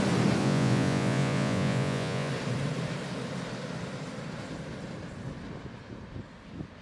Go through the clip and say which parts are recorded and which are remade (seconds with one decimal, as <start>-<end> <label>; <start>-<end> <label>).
0.0-0.4 recorded; 0.4-2.3 remade; 2.3-6.8 recorded